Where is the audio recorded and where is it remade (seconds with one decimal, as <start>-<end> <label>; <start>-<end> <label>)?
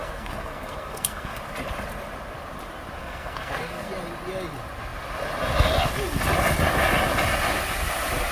0.0-1.4 remade; 1.4-3.0 recorded; 3.0-3.9 remade; 3.9-8.3 recorded